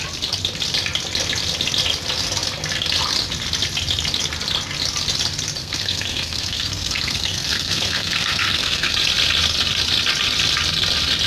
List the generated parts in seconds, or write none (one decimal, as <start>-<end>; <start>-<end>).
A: 5.6-8.9